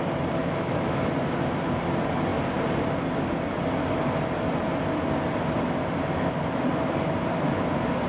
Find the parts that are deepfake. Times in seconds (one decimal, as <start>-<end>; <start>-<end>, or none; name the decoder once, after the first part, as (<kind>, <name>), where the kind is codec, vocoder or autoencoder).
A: 0.4-1.1 (autoencoder, DAC-VAE)